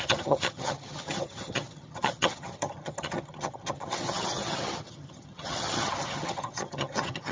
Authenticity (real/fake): fake